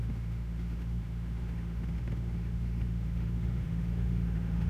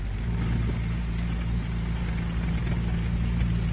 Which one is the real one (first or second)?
second